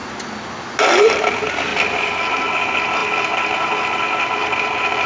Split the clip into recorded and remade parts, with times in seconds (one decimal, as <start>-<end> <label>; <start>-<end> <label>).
0.0-1.0 recorded; 1.0-1.7 remade; 1.7-2.4 recorded; 2.4-5.1 remade